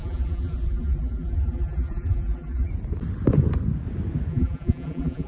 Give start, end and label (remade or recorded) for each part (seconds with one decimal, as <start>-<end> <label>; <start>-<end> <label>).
0.0-2.7 remade; 2.7-4.3 recorded; 4.3-5.3 remade